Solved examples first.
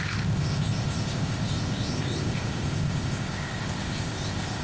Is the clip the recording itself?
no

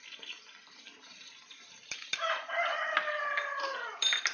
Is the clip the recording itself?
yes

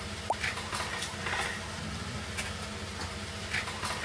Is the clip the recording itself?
yes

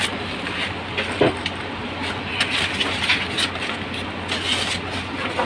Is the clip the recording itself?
yes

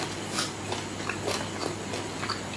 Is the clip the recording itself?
yes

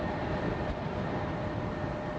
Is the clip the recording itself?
yes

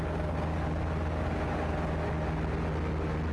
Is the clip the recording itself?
yes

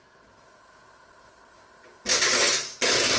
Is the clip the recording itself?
yes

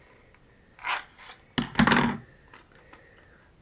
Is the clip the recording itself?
yes